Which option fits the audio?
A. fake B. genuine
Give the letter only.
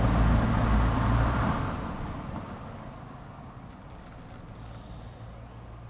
B